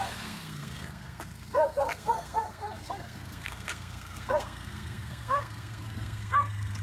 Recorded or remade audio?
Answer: remade